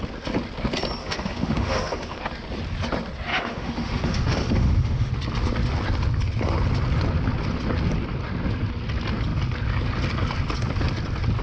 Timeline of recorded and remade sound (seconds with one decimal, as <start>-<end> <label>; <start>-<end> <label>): 0.0-1.0 recorded; 1.0-2.2 remade; 2.2-3.3 recorded; 3.3-5.1 remade; 5.1-11.4 recorded